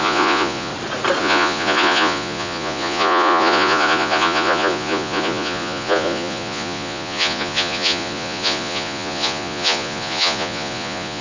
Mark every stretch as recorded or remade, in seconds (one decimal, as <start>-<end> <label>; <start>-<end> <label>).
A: 0.0-0.7 remade; 0.7-1.2 recorded; 1.2-11.2 remade